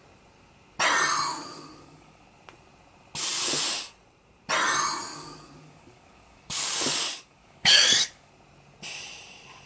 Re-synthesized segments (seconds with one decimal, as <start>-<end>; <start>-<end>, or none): 1.3-2.2; 5.1-8.3